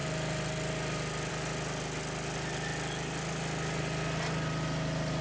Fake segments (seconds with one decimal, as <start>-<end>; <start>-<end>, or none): none